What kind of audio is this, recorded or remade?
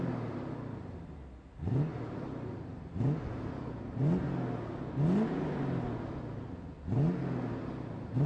recorded